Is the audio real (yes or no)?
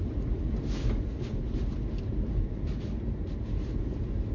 yes